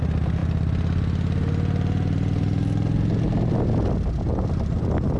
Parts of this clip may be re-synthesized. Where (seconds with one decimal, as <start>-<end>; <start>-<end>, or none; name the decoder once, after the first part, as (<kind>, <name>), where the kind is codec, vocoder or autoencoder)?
none